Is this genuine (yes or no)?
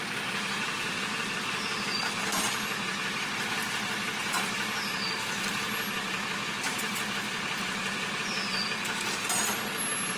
yes